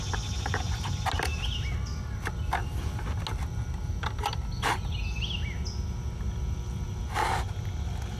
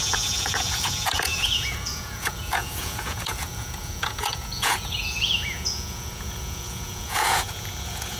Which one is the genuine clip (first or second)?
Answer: first